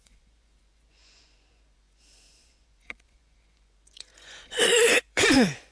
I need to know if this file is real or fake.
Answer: fake